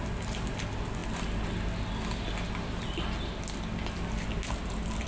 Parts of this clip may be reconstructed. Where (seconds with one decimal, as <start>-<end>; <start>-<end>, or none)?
none